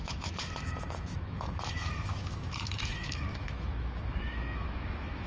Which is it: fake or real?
fake